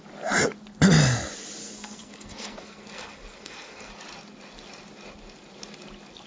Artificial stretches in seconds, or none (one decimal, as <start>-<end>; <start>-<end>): 1.6-3.9